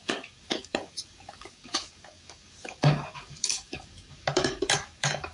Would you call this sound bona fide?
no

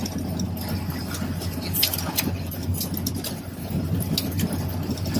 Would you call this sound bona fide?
yes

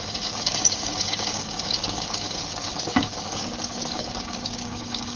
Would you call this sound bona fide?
no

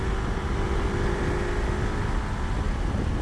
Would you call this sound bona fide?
yes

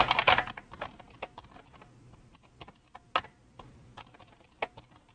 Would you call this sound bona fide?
yes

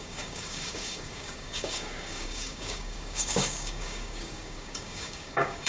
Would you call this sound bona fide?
no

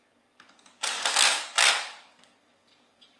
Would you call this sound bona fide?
no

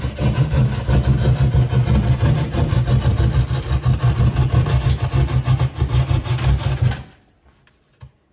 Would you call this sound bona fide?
yes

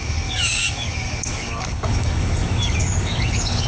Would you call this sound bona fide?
no